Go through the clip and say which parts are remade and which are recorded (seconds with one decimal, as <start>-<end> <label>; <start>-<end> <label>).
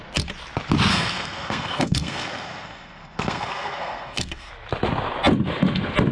0.0-0.9 recorded; 0.9-4.5 remade; 4.5-6.1 recorded